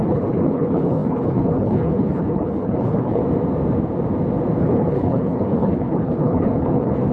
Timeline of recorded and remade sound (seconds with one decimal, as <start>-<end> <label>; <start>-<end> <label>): 0.0-3.2 remade; 3.2-4.6 recorded; 4.6-7.1 remade